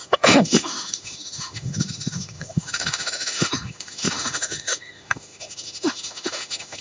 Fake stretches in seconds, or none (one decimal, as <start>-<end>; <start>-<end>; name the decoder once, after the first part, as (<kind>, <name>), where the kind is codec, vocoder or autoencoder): 0.0-6.8 (autoencoder, DAC-VAE)

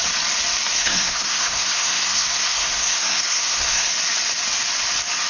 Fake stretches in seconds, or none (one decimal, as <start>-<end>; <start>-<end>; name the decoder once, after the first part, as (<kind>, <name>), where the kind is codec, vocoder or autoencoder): 0.7-3.9 (codec, SNAC)

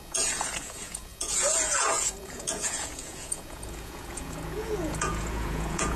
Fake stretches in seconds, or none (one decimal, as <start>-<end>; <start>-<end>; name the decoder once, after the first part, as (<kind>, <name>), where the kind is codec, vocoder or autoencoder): 0.0-6.0 (vocoder, Vocos)

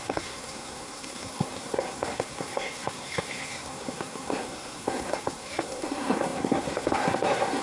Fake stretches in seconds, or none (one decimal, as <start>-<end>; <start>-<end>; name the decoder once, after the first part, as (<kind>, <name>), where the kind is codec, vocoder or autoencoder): 0.0-7.6 (codec, SNAC)

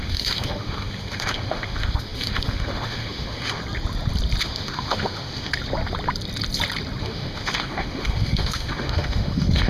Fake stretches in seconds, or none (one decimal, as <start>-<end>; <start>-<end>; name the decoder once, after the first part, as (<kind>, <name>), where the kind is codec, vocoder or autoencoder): 0.0-3.6 (autoencoder, DAC-VAE); 4.4-5.5; 7.0-9.7

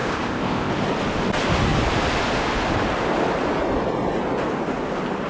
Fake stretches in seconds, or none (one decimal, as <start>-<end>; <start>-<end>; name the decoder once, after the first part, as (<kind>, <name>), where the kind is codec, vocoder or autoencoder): 0.0-0.7 (codec, ZipCodec)

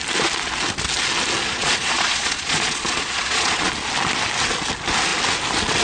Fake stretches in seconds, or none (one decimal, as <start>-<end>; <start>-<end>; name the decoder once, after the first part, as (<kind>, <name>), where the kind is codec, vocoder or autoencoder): 1.4-3.7 (vocoder, Vocos)

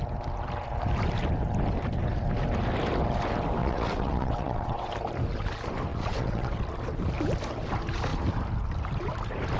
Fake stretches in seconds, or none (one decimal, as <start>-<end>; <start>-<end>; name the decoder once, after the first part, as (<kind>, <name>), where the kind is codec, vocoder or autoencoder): 3.6-4.9 (vocoder, WaveNeXt); 5.9-6.6